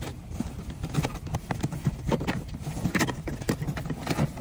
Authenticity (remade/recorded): recorded